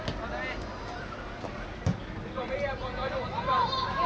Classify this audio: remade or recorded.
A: recorded